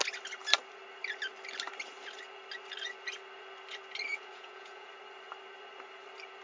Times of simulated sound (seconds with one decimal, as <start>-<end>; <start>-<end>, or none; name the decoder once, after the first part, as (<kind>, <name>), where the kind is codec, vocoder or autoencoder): 4.1-4.9 (vocoder, Vocos)